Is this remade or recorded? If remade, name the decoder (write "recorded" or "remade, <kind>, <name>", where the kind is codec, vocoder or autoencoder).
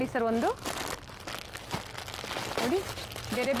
recorded